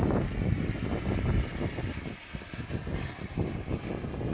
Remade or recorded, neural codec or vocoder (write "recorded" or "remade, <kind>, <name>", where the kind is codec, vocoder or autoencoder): recorded